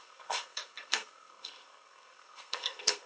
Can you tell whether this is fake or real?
fake